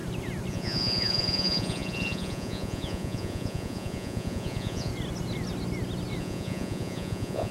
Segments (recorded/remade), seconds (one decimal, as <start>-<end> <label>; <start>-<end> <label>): 0.0-0.5 recorded; 0.5-4.9 remade; 4.9-6.2 recorded; 6.2-7.5 remade

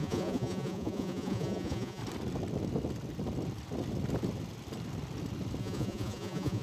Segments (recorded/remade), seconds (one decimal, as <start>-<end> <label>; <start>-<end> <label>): 0.0-2.0 remade; 2.0-5.6 recorded; 5.6-6.6 remade

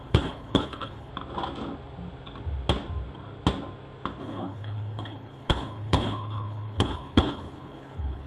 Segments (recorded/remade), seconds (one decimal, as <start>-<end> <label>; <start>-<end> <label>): 0.0-1.1 remade; 1.1-4.2 recorded; 4.2-8.3 remade

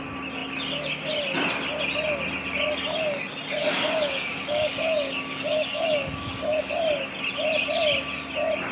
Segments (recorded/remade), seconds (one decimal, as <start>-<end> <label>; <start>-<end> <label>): 0.0-3.6 recorded; 3.6-6.7 remade; 6.7-8.7 recorded

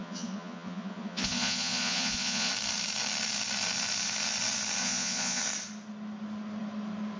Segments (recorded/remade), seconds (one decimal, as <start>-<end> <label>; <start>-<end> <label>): 0.0-2.5 remade; 2.5-4.8 recorded; 4.8-5.4 remade; 5.4-7.2 recorded